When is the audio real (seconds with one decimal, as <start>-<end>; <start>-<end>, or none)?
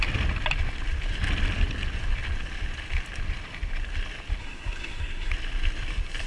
0.0-4.4; 5.3-6.3